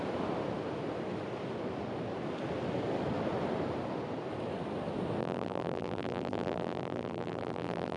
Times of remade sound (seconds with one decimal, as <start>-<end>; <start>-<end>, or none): 5.2-8.0